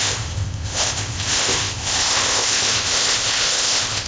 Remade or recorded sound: remade